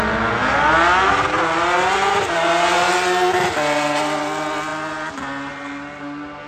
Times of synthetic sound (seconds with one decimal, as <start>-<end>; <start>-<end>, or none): none